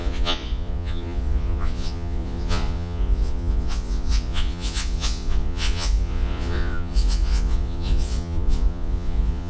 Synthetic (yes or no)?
yes